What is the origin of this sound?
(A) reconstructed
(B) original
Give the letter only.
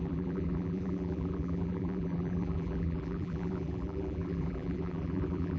A